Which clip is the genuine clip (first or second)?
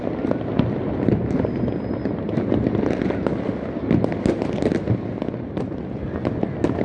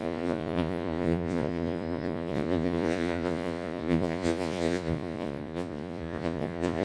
first